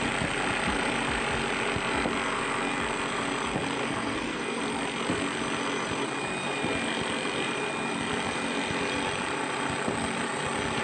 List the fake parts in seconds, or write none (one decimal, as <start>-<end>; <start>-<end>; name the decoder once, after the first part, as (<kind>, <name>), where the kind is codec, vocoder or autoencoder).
3.8-4.6 (codec, SNAC)